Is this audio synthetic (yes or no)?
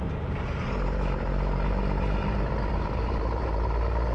yes